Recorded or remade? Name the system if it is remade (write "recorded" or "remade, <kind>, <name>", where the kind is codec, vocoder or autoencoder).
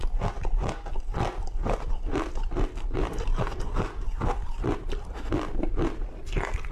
recorded